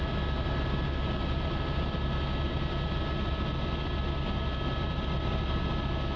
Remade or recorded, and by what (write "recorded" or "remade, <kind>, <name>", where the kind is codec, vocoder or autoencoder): recorded